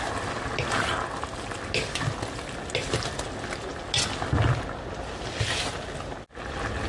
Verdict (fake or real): real